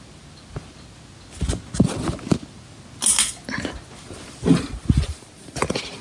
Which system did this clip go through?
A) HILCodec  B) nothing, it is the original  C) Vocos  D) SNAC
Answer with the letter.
B